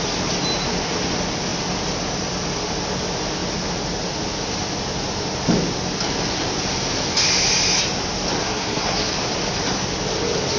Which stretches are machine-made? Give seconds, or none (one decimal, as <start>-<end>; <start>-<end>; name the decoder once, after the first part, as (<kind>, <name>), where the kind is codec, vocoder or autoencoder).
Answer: 8.4-9.1 (codec, SNAC)